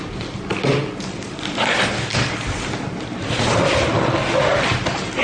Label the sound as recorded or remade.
recorded